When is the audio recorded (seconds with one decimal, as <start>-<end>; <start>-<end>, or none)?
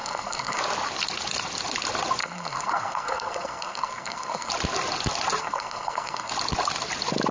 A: 0.6-2.2; 4.5-5.4; 6.3-7.3